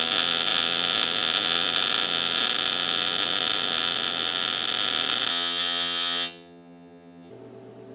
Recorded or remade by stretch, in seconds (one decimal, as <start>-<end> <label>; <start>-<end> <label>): 0.0-5.3 recorded; 5.3-7.3 remade; 7.3-7.9 recorded